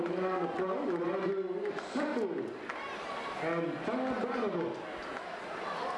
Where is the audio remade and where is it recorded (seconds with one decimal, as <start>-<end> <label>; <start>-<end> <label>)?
0.0-6.0 recorded